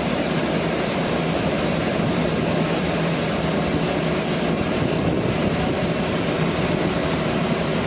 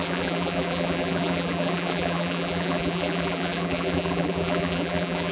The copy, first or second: second